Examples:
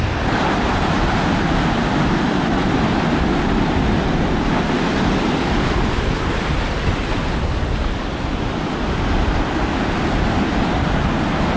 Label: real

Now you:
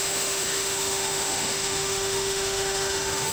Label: fake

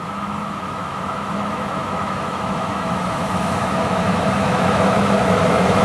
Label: fake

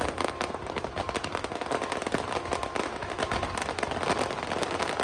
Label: real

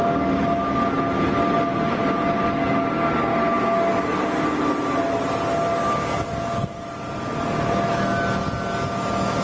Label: real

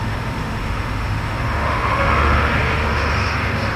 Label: fake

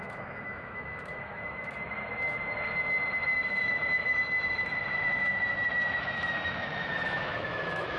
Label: fake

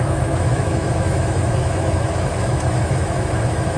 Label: fake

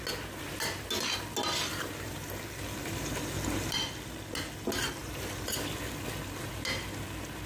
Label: real